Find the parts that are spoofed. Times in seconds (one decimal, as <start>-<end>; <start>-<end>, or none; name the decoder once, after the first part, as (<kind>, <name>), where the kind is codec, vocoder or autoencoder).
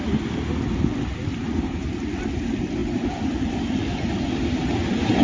1.3-2.0 (vocoder, BigVGAN v2)